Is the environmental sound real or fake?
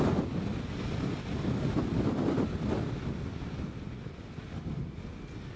real